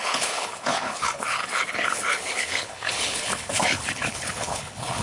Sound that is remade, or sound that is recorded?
remade